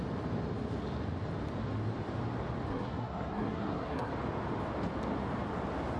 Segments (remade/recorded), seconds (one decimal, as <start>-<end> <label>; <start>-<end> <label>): 0.0-2.7 recorded; 2.7-4.1 remade; 4.1-6.0 recorded